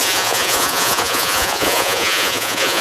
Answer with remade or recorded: remade